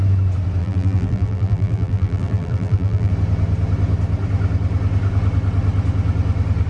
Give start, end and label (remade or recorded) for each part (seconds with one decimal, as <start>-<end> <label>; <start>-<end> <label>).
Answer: 0.0-0.6 recorded; 0.6-3.1 remade; 3.1-6.7 recorded